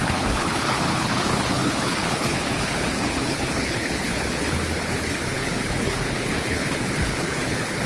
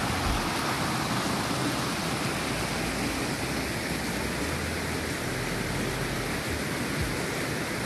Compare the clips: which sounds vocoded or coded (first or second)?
first